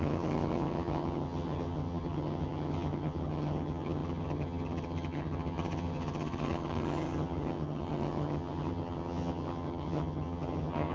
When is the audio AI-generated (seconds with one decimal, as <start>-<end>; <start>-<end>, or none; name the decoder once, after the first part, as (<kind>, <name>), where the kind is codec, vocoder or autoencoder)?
0.0-10.9 (vocoder, HiFi-GAN)